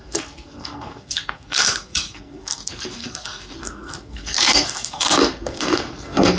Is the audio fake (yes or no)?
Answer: yes